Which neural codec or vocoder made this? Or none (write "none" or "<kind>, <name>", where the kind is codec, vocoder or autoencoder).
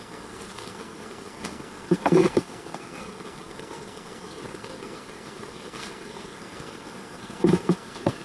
codec, SNAC